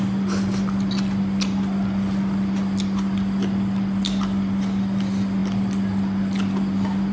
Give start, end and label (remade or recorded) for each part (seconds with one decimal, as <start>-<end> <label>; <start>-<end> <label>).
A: 0.0-7.1 recorded